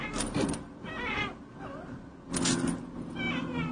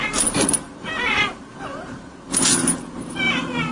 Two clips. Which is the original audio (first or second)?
first